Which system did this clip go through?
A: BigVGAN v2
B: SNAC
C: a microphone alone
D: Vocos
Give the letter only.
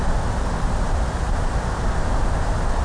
A